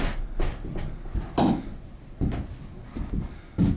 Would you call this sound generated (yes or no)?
no